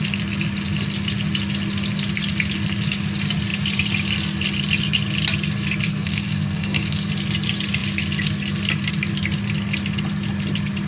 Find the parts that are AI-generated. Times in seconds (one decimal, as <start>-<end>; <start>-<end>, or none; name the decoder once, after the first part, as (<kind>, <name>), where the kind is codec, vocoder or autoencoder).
5.9-7.1 (codec, SNAC)